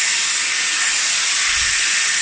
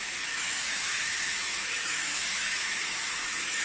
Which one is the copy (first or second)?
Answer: second